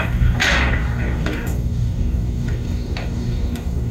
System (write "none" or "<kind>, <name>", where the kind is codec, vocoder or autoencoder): codec, DAC